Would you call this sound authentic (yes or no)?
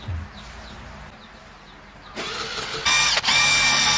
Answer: yes